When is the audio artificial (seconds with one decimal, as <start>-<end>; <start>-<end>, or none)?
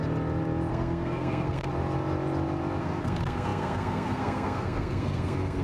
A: 0.7-1.7; 2.8-5.6